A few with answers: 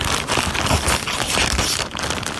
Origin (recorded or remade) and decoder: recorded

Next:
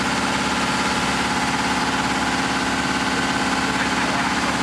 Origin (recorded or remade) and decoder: recorded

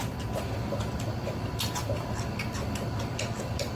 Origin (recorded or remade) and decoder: recorded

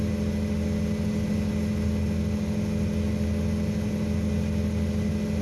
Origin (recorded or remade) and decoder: recorded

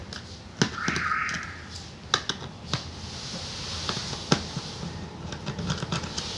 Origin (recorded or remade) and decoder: recorded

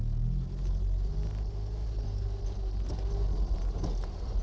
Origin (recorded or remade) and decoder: recorded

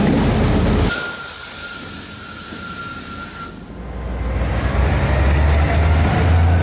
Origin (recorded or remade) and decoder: recorded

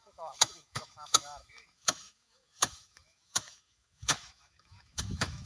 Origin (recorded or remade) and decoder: remade, autoencoder, DAC-VAE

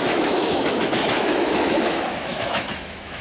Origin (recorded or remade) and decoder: remade, autoencoder, DAC-VAE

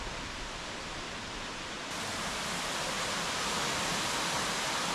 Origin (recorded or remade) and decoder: recorded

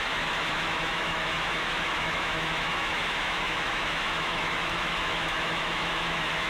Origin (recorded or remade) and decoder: remade, autoencoder, DAC-VAE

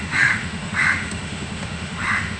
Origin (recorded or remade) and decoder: remade, autoencoder, DAC-VAE